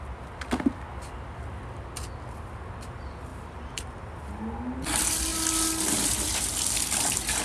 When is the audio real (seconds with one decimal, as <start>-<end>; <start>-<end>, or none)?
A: 0.0-7.4